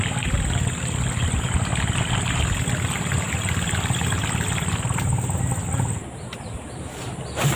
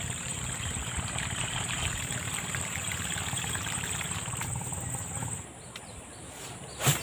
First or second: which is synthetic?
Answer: second